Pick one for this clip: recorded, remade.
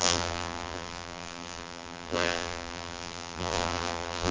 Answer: remade